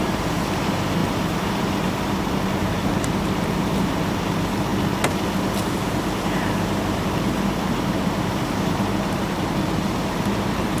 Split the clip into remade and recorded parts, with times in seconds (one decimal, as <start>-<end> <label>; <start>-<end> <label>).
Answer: 0.0-4.7 remade; 4.7-5.7 recorded; 5.7-10.8 remade